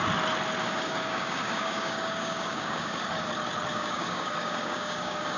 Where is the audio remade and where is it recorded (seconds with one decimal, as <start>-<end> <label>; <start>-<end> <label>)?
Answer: 0.0-0.6 recorded; 0.6-3.3 remade; 3.3-3.7 recorded; 3.7-5.4 remade